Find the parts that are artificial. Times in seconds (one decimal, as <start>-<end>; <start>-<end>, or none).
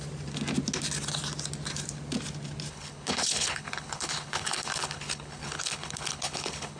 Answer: 2.7-6.8